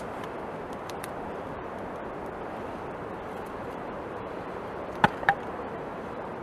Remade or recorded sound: remade